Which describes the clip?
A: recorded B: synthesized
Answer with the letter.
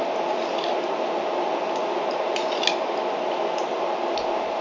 A